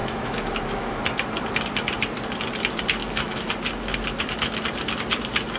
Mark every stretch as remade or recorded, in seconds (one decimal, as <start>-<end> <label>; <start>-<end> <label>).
0.0-1.0 remade; 1.0-3.0 recorded; 3.0-3.5 remade; 3.5-5.6 recorded